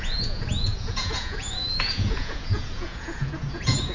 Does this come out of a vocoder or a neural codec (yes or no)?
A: yes